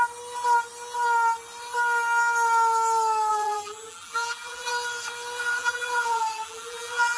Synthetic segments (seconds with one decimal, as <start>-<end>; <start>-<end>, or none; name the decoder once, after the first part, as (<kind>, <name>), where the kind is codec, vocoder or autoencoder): 3.3-4.7 (vocoder, BigVGAN v2); 5.6-7.2